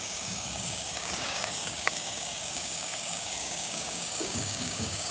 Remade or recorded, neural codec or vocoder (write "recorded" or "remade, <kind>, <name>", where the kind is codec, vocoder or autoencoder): remade, codec, DAC